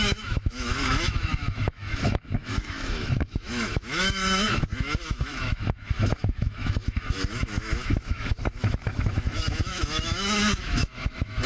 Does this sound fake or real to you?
fake